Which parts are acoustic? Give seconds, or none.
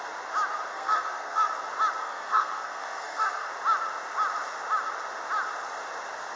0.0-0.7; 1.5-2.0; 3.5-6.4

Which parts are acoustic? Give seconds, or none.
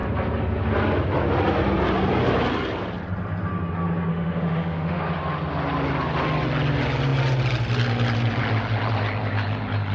0.0-4.1; 5.0-9.9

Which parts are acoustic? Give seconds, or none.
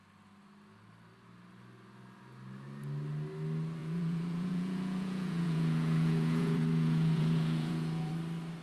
0.0-3.8; 8.1-8.6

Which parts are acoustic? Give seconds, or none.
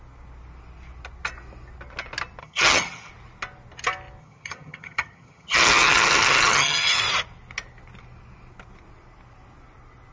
0.0-2.4; 3.1-4.2; 7.0-10.1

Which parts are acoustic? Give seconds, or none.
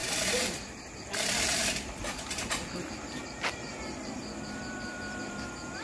none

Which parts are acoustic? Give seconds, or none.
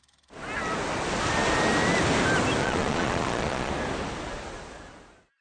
0.0-2.6; 3.7-5.4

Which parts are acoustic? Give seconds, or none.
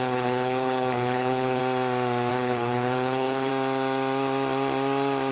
1.6-2.3; 3.5-5.3